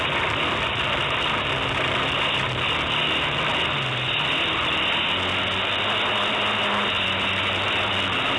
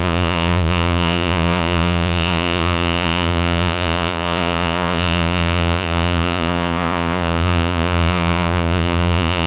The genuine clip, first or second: first